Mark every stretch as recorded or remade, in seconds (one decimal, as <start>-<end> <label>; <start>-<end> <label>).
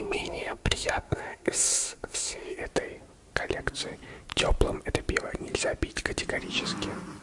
0.0-2.6 remade; 2.6-7.2 recorded